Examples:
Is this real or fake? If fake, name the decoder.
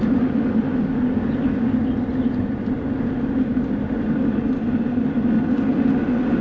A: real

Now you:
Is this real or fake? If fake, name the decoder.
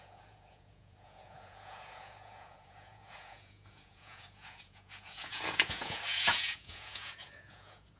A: fake, vocoder, Vocos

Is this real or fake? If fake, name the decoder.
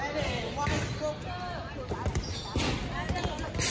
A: real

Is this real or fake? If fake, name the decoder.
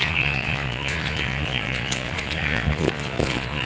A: fake, vocoder, Vocos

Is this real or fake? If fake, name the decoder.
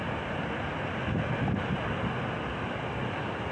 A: real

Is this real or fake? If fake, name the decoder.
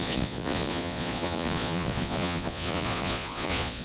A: fake, vocoder, Vocos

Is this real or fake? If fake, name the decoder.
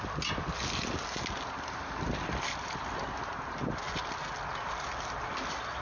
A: real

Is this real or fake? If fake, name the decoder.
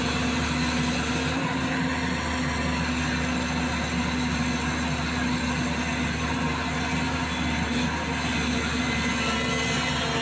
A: real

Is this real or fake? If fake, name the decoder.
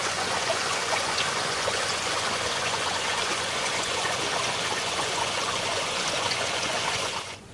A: fake, vocoder, Vocos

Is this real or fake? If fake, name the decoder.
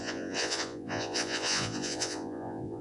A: fake, vocoder, Vocos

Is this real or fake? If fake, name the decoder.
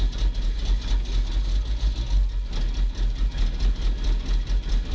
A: real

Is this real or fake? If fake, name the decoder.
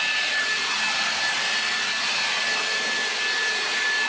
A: real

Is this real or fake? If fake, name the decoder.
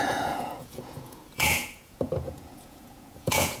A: fake, vocoder, Vocos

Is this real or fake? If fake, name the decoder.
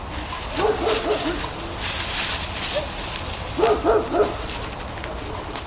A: real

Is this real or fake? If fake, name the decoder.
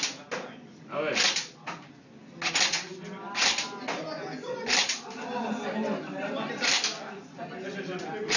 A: real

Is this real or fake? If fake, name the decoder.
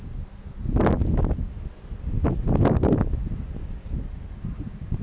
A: real